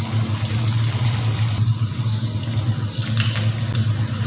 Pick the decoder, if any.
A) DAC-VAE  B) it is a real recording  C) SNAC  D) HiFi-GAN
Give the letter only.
B